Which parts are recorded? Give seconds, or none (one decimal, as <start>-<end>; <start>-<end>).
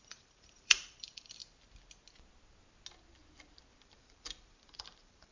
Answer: 1.4-3.8